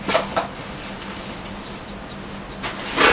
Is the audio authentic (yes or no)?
yes